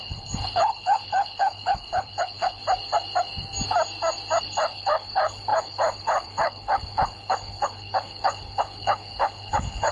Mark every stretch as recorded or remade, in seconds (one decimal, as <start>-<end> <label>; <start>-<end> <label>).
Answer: 0.0-2.6 remade; 2.6-4.4 recorded; 4.4-9.9 remade